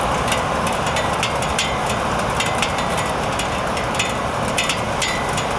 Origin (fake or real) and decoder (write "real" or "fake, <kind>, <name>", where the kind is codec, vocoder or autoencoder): real